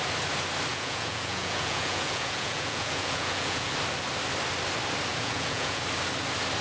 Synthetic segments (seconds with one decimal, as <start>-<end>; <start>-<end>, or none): 0.7-3.7; 5.1-5.8